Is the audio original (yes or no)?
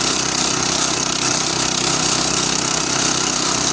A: yes